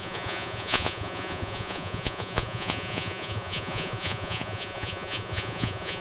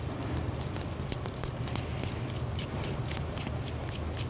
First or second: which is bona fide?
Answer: second